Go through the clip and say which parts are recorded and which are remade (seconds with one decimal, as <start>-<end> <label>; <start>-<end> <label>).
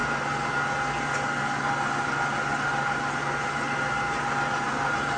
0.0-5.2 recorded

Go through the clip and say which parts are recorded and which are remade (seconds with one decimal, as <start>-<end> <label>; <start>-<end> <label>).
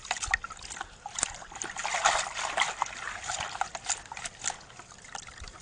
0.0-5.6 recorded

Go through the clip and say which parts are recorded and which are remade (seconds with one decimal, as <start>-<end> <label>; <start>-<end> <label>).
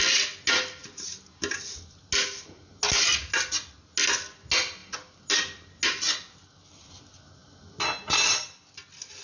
0.0-9.2 recorded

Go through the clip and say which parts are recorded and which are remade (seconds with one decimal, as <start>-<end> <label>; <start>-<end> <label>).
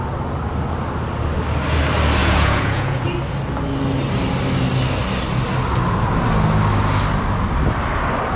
0.0-2.2 recorded; 2.2-3.0 remade; 3.0-8.4 recorded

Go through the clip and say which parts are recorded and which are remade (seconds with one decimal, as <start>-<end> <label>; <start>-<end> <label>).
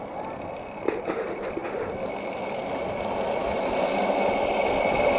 0.0-5.2 recorded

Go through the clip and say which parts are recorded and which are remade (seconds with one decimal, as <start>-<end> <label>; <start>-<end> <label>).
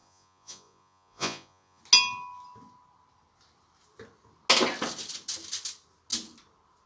0.0-1.8 remade; 1.8-6.9 recorded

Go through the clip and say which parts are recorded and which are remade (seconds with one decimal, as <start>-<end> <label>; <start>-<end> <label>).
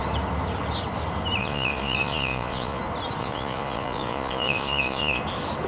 0.0-1.4 recorded; 1.4-2.8 remade; 2.8-3.2 recorded; 3.2-5.2 remade; 5.2-5.7 recorded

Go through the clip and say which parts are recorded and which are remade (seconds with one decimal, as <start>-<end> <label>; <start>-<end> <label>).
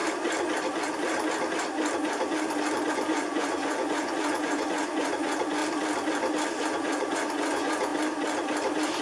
0.0-2.9 recorded; 2.9-5.6 remade; 5.6-6.6 recorded; 6.6-7.9 remade; 7.9-9.0 recorded